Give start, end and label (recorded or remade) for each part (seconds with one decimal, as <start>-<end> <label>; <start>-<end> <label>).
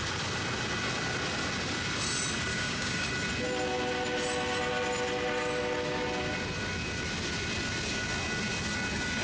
0.0-2.5 recorded; 2.5-3.1 remade; 3.1-9.2 recorded